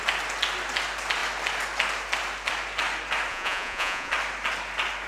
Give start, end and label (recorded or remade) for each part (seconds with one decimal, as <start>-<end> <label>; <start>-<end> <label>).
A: 0.0-3.3 recorded; 3.3-4.1 remade; 4.1-5.1 recorded